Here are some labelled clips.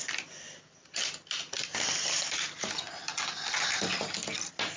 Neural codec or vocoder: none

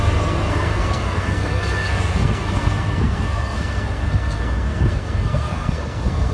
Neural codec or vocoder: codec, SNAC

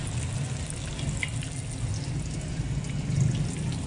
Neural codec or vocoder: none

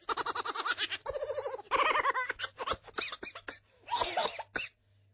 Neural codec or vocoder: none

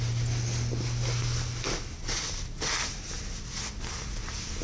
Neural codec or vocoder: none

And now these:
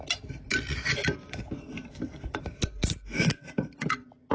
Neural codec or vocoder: none